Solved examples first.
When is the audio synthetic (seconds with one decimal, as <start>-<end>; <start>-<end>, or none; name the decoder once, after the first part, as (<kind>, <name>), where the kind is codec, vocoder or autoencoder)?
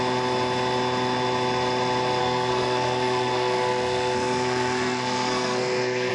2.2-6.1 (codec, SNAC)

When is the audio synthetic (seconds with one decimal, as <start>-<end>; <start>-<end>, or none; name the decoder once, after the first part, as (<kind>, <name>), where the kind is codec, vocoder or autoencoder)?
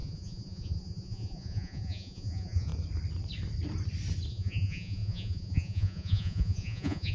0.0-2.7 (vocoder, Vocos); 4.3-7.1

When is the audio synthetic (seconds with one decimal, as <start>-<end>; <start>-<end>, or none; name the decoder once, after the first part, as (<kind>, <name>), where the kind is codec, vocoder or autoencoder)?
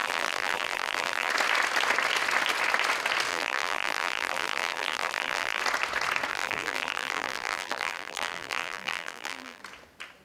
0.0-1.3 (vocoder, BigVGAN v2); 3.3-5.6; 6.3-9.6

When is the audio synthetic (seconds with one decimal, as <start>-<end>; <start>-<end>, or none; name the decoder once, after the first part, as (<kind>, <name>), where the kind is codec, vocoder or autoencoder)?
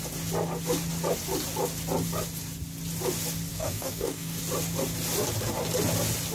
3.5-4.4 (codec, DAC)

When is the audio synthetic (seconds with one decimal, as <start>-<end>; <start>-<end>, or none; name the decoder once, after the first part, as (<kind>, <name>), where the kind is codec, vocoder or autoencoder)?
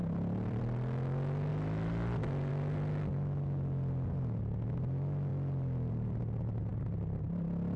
0.0-0.6 (vocoder, BigVGAN v2); 6.7-7.2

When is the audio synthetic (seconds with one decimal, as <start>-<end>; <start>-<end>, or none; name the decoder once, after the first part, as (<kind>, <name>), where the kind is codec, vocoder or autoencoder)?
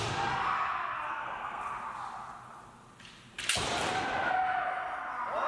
1.1-1.6 (codec, SNAC)